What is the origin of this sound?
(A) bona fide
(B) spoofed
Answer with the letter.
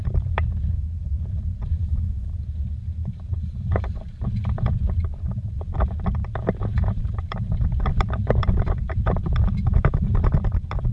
B